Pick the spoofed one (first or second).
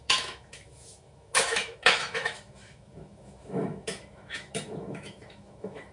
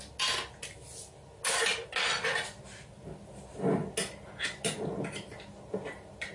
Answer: first